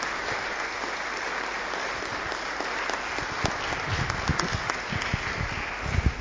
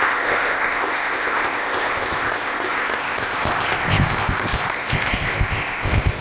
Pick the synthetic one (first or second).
second